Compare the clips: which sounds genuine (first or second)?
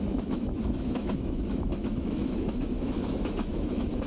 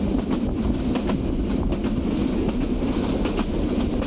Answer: second